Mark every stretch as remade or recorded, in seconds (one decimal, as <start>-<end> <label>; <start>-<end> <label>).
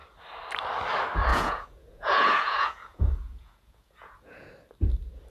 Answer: 0.0-1.3 recorded; 1.3-4.5 remade; 4.5-5.3 recorded